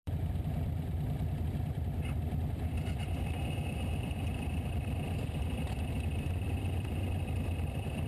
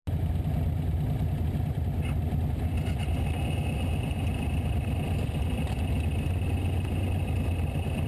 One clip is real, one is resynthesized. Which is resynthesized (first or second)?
first